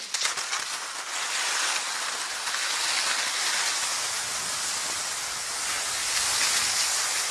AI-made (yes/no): no